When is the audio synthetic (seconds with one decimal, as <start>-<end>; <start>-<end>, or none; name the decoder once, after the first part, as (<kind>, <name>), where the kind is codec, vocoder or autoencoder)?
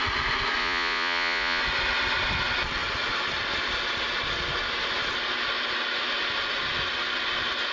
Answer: 0.6-1.6 (vocoder, Vocos)